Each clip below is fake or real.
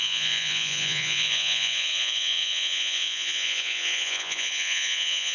fake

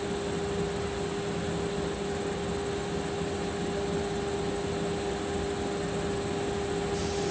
real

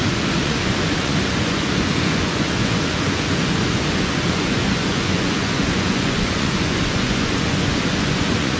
fake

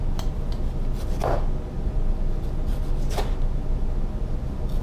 real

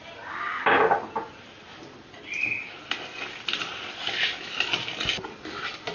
real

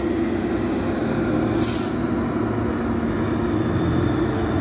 real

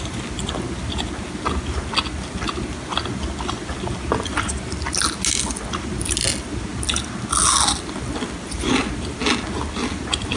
real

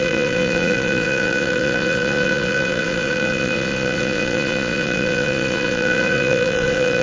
fake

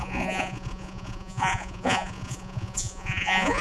fake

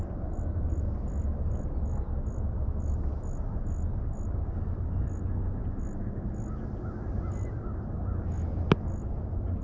real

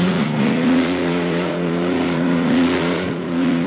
fake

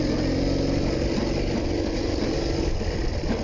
real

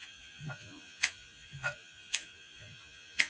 fake